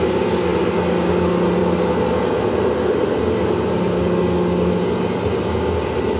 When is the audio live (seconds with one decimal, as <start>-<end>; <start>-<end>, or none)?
0.0-6.2